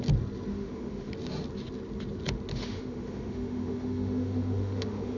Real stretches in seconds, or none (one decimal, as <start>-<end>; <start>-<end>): 0.0-0.5; 1.1-2.5